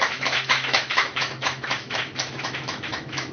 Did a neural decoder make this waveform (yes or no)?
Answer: yes